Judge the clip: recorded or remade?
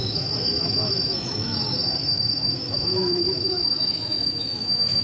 remade